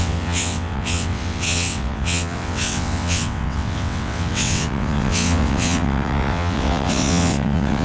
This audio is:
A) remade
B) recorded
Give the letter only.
A